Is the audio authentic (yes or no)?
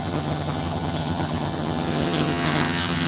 no